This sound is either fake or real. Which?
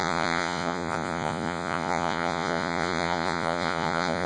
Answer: fake